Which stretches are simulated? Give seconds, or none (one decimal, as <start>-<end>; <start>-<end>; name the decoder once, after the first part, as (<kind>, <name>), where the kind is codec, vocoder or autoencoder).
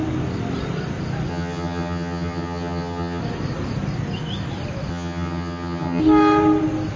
1.3-3.2 (vocoder, HiFi-GAN); 4.9-6.0